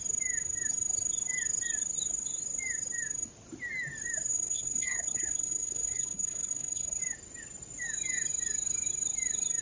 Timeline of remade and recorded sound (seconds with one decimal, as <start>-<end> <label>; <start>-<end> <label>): 0.0-4.3 recorded; 4.3-7.0 remade; 7.0-9.6 recorded